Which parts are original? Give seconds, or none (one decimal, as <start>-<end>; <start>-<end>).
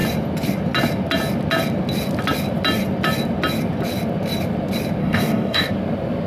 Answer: 0.0-5.0; 5.7-6.3